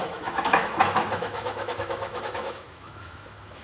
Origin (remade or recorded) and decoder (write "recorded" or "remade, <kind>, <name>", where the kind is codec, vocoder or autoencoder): remade, autoencoder, DAC-VAE